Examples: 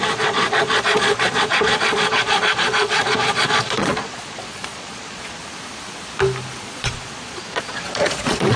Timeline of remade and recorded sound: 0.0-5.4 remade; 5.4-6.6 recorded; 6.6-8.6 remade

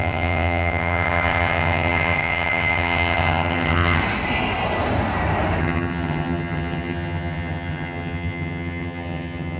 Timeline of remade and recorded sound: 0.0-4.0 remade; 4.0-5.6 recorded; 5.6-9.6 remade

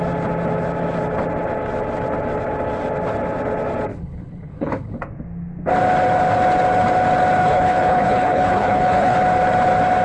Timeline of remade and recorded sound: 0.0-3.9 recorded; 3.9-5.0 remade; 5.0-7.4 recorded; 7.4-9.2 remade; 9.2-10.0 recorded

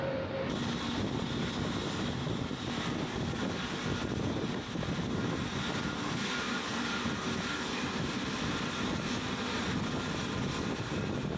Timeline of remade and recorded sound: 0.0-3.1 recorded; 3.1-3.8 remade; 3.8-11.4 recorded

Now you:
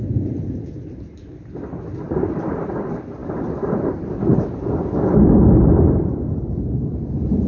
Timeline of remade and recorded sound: 0.0-7.5 recorded

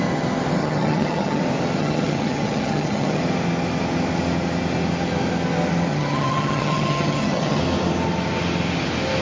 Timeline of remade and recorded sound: 0.0-0.6 recorded; 0.6-1.4 remade; 1.4-1.8 recorded; 1.8-3.2 remade; 3.2-5.9 recorded; 5.9-7.6 remade; 7.6-9.2 recorded

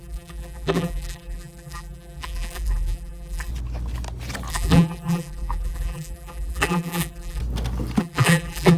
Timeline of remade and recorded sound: 0.0-3.5 remade; 3.5-4.5 recorded; 4.5-7.4 remade; 7.4-8.0 recorded; 8.0-8.8 remade

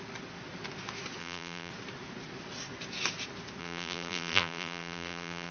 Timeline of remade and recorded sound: 0.0-1.2 recorded; 1.2-1.7 remade; 1.7-3.6 recorded; 3.6-5.5 remade